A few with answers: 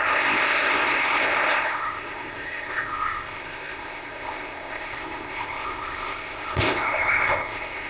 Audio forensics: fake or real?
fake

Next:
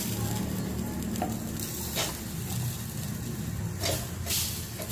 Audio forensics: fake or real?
real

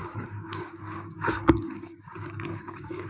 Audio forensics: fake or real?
fake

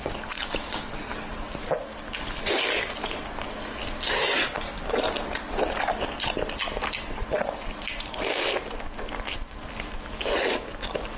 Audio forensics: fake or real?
real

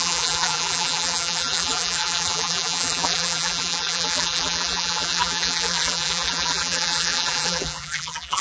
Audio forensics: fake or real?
fake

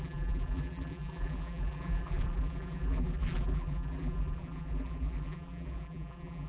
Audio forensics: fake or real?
fake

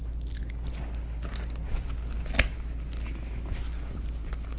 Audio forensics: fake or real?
real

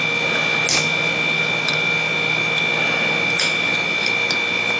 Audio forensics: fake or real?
real